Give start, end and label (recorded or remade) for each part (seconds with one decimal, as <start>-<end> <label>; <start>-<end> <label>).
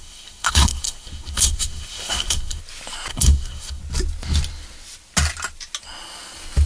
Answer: 0.0-2.6 remade; 2.6-3.1 recorded; 3.1-3.8 remade; 3.8-6.7 recorded